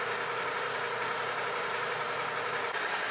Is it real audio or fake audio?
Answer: real